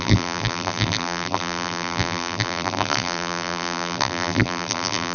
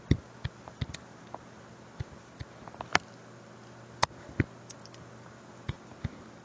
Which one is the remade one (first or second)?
first